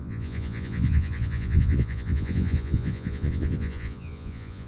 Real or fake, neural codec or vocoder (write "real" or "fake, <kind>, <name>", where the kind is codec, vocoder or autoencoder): fake, vocoder, Vocos